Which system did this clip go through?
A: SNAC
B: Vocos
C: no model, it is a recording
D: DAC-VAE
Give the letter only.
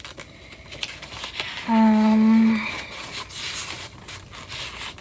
C